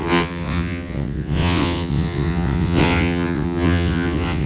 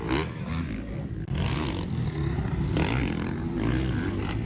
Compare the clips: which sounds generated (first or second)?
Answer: first